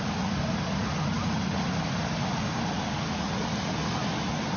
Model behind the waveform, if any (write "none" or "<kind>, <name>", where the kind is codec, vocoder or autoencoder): none